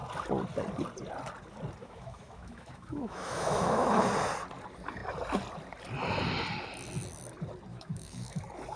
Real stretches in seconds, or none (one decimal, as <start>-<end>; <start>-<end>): 0.0-1.8; 4.0-7.7; 8.4-8.8